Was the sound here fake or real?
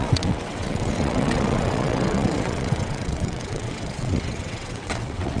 fake